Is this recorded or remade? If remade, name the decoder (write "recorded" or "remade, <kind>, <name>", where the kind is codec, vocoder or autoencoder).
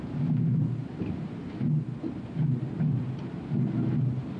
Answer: remade, vocoder, BigVGAN v2